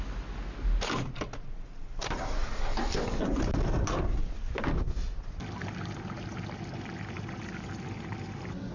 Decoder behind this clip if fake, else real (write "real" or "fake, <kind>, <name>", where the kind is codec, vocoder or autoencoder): real